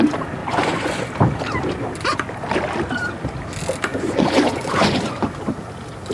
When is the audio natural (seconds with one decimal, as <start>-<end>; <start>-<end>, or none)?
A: 0.0-0.4; 1.1-3.9; 5.5-6.1